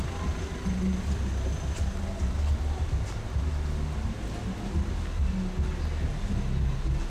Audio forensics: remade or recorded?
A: recorded